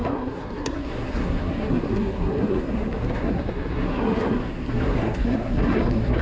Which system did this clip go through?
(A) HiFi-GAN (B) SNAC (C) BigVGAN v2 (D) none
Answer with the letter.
B